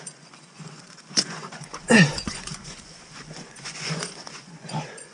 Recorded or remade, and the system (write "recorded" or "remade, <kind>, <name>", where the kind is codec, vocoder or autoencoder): remade, vocoder, Vocos